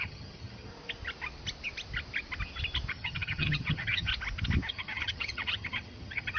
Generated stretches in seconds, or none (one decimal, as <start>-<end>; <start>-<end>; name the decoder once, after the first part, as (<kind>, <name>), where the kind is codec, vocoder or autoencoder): 0.0-0.7 (vocoder, HiFi-GAN); 2.9-4.1; 4.7-6.4